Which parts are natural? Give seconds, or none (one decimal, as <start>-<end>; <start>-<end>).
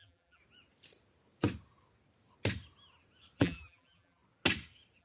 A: 0.4-3.4; 4.2-5.0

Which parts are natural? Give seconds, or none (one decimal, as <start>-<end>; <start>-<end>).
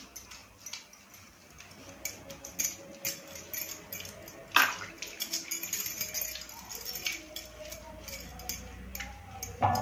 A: 0.0-9.8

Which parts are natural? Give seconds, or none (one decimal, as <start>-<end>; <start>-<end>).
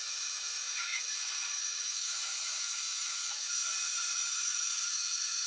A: 3.6-4.3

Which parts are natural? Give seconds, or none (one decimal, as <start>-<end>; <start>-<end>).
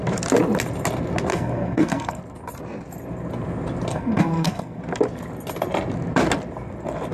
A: 0.0-1.3; 2.2-3.9; 4.8-7.1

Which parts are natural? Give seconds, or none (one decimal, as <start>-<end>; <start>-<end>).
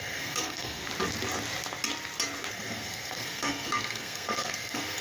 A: 0.8-2.5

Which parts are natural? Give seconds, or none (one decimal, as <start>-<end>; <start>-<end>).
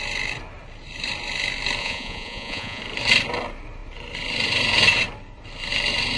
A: 0.0-1.8; 2.8-6.2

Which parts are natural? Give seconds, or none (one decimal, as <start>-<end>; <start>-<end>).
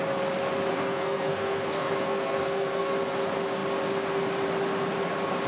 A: 0.0-0.7; 2.9-5.5